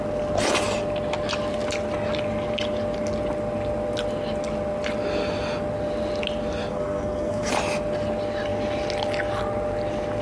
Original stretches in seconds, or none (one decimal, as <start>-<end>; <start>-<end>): 0.0-6.7; 7.5-10.2